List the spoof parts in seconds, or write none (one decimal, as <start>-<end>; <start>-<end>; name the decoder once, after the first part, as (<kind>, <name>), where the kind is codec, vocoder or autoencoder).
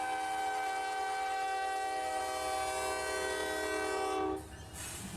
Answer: 0.4-2.2 (autoencoder, DAC-VAE)